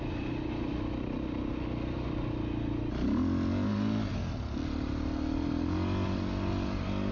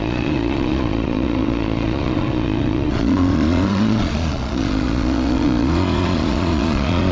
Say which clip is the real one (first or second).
first